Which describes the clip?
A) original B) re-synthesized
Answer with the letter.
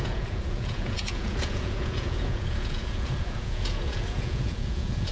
B